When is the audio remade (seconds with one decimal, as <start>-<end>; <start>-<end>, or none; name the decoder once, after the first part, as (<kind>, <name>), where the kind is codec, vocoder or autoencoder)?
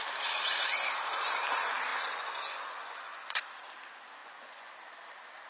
1.9-3.4 (vocoder, Vocos); 4.2-4.7